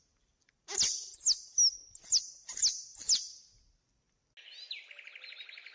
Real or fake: real